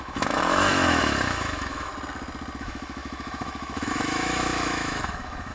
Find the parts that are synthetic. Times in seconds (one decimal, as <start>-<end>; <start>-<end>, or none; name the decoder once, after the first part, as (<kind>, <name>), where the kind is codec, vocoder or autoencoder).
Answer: 0.0-1.9 (autoencoder, DAC-VAE); 2.6-5.5